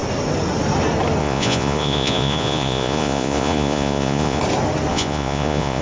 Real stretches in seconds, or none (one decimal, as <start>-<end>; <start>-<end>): 0.0-1.2; 4.4-4.9